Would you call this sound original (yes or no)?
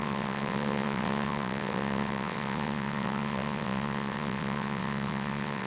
no